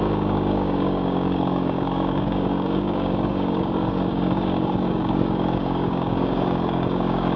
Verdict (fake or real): fake